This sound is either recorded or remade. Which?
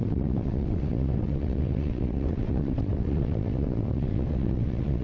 remade